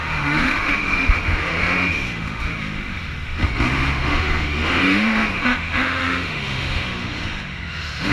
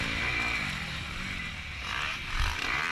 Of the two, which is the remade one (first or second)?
first